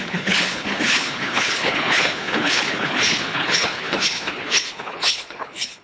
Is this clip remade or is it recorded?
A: remade